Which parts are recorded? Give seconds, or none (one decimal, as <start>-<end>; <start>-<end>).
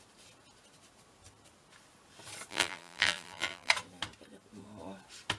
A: 0.0-2.5; 3.7-5.4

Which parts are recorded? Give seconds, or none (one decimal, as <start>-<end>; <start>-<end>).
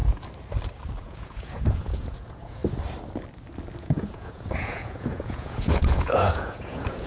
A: 0.0-1.0; 2.6-3.8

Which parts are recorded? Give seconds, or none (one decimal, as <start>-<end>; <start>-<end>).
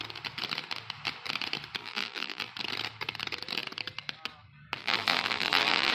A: 0.0-1.8; 2.5-4.8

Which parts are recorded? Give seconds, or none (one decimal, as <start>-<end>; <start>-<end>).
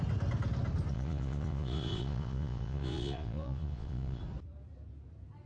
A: 0.0-0.9; 4.2-5.5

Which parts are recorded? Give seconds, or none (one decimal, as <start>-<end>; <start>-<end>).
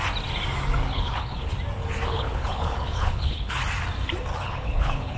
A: 0.0-0.8; 1.5-2.1; 3.6-4.3